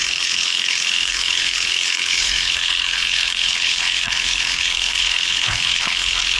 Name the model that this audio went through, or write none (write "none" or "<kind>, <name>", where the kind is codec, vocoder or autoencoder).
codec, HILCodec